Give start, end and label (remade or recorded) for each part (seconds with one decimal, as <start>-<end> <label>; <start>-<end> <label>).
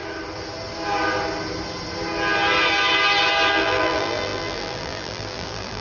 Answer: 0.0-3.5 recorded; 3.5-5.8 remade